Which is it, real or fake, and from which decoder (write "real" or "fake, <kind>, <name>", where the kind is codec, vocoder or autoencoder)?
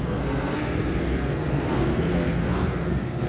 fake, codec, SNAC